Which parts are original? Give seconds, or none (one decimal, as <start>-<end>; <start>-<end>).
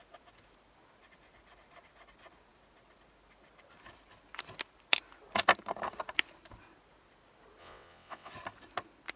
0.0-7.6; 8.3-9.2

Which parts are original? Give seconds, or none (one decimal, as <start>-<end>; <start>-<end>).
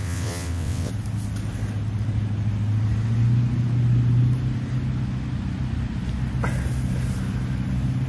0.9-8.1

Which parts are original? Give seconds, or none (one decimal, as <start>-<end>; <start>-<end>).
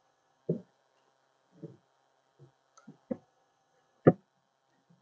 0.4-3.1; 4.0-5.0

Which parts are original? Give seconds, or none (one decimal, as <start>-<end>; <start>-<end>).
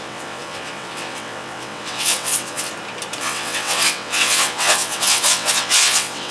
2.7-3.2